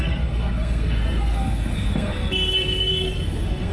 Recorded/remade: remade